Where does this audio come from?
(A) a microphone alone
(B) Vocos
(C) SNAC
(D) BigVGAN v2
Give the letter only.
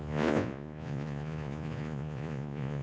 B